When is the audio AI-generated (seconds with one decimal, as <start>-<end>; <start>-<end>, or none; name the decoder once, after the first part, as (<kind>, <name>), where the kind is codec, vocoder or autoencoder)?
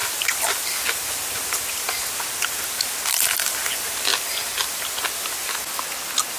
none